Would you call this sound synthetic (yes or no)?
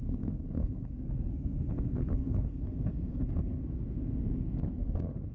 yes